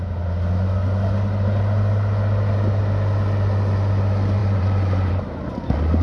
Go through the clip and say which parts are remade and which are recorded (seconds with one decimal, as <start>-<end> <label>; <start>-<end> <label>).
0.0-4.4 recorded; 4.4-5.1 remade; 5.1-6.0 recorded